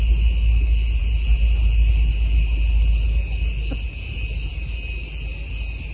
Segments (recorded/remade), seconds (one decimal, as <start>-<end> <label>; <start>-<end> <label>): 0.0-5.9 recorded